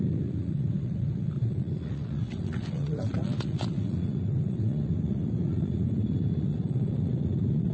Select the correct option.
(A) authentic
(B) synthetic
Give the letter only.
B